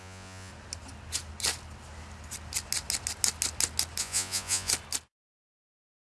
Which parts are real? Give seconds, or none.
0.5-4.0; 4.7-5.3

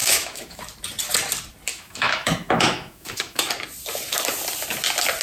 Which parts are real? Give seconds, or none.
0.6-1.7; 3.5-5.2

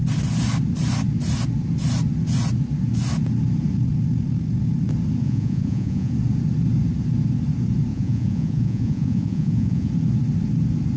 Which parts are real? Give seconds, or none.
0.0-5.2; 6.1-7.9; 9.9-11.0

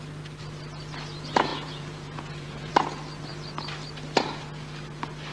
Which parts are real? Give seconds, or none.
0.0-1.5; 2.7-5.3